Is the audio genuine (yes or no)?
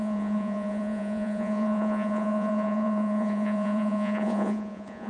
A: no